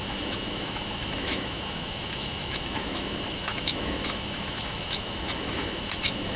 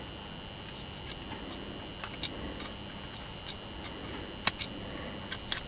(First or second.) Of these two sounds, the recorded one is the second